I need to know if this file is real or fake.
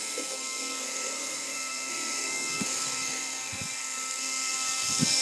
fake